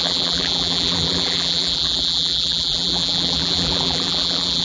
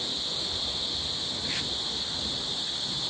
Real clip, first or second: second